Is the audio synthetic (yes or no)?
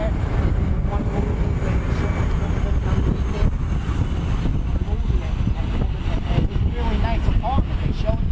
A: no